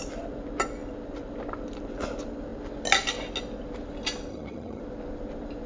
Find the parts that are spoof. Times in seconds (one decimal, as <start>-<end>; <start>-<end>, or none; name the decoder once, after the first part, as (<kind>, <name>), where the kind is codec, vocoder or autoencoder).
4.3-4.8 (vocoder, HiFi-GAN)